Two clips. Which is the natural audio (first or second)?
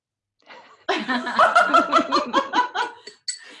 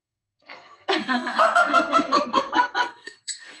first